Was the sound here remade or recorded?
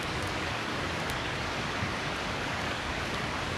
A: remade